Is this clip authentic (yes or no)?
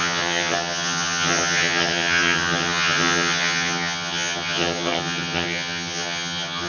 no